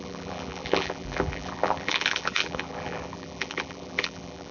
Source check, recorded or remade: remade